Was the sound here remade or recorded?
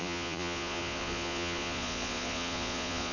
remade